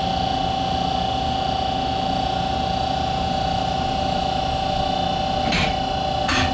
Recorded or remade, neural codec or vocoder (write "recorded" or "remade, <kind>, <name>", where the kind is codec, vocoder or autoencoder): recorded